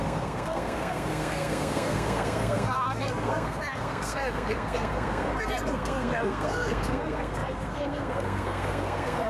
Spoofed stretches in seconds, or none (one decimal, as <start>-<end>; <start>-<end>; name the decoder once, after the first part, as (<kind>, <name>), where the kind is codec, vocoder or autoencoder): 0.0-9.3 (codec, SNAC)